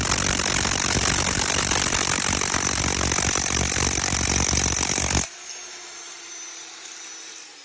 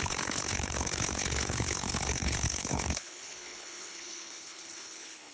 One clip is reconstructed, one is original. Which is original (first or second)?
first